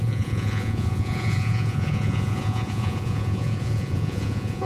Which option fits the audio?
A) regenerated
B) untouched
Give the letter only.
A